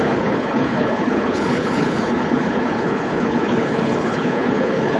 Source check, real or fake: fake